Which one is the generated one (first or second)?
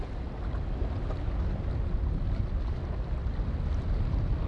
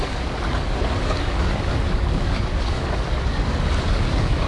second